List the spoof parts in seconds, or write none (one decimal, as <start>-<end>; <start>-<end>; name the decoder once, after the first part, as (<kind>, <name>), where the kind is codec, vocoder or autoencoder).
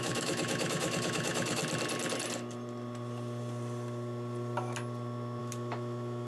0.0-1.6 (autoencoder, DAC-VAE); 5.4-6.3